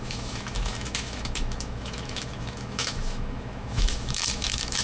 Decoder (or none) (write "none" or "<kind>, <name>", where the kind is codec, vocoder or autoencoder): autoencoder, DAC-VAE